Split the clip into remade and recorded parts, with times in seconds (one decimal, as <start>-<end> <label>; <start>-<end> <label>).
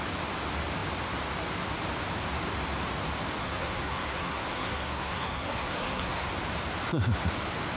0.0-3.4 recorded; 3.4-6.3 remade; 6.3-7.8 recorded